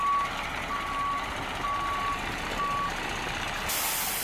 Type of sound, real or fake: real